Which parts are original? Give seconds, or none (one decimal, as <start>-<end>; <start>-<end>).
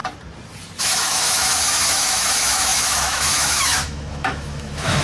0.0-0.8